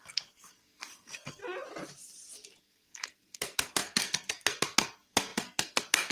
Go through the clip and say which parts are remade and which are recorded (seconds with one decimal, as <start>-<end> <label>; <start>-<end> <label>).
0.0-1.4 remade; 1.4-2.6 recorded; 2.6-6.1 remade